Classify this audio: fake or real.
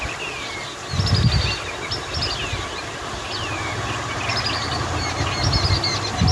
real